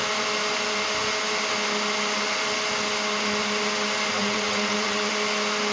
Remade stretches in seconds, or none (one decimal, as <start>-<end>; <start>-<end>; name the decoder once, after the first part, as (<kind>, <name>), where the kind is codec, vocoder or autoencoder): 4.2-5.1 (vocoder, WaveNeXt)